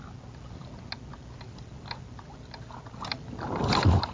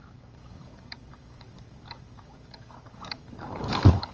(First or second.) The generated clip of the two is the second